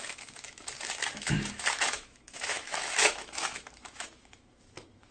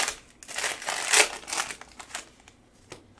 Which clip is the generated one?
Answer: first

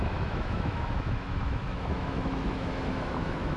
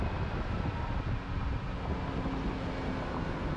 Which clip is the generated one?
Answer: first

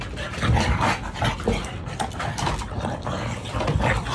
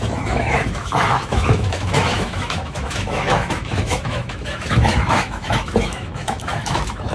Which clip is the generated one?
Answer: second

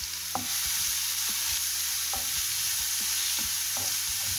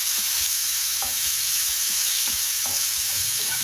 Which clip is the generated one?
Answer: second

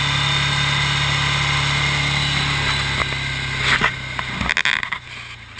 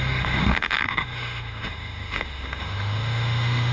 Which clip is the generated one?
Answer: second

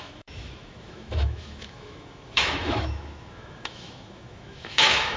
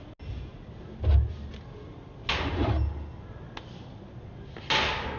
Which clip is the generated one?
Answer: first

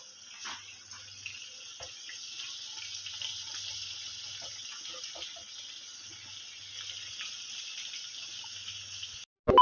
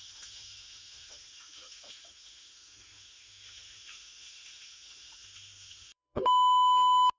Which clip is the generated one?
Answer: second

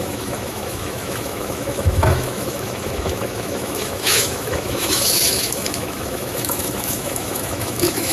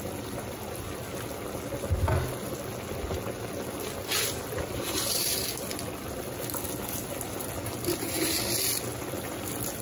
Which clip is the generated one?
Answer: first